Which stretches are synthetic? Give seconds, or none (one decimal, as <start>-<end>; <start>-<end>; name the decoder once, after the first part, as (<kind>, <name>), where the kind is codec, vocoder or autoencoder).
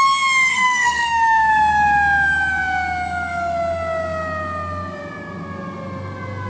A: 0.5-1.5 (codec, SNAC)